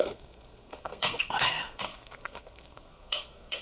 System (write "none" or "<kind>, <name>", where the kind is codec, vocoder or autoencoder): codec, SNAC